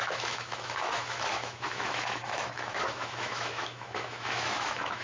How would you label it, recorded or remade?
remade